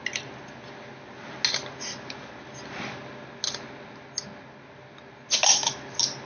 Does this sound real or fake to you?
real